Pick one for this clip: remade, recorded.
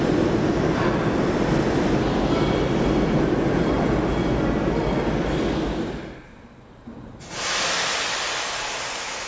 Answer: recorded